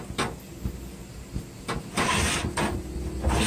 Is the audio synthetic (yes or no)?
no